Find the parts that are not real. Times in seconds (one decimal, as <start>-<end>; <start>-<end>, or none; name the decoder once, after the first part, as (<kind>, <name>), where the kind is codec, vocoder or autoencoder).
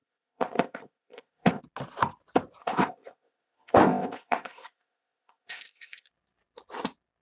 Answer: 0.0-1.6 (codec, ZipCodec); 2.6-6.1